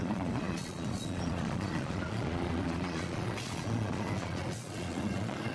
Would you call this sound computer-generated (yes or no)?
yes